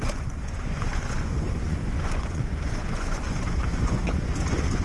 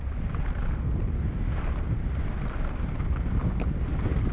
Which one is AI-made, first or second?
first